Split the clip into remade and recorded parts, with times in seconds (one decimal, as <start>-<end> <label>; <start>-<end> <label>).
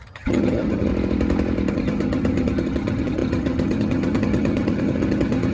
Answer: 0.0-0.9 remade; 0.9-1.7 recorded; 1.7-5.5 remade